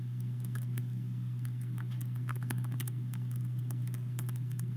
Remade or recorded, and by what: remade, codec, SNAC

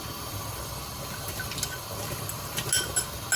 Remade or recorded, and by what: recorded